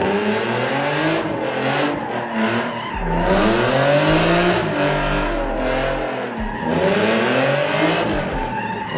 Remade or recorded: recorded